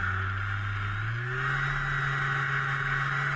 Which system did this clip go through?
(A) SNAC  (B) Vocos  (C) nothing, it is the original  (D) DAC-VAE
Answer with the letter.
C